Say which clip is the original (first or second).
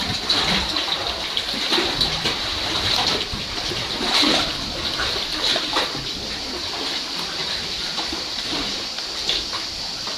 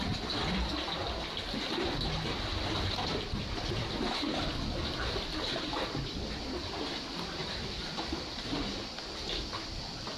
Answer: second